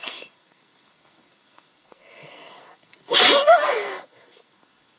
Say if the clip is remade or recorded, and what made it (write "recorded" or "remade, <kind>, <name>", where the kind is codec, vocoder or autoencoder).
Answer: remade, codec, SNAC